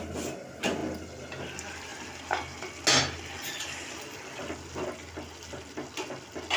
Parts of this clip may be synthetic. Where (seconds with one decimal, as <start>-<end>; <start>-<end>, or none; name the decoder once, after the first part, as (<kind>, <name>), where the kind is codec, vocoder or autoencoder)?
none